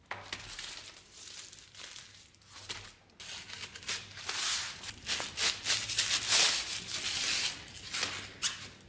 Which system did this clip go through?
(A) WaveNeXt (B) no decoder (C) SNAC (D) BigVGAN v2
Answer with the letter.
B